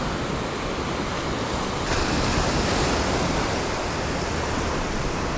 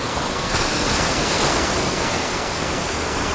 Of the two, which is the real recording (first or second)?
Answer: first